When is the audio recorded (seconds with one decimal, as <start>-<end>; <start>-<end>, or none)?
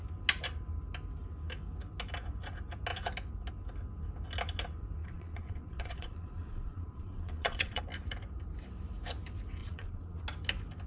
0.0-5.0; 7.8-9.6; 10.2-10.9